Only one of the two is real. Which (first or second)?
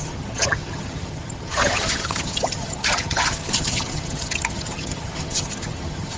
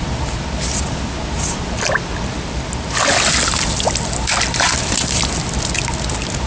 second